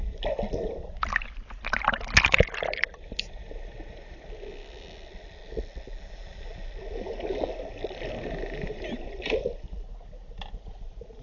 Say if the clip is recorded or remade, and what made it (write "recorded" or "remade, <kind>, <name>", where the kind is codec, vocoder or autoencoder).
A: recorded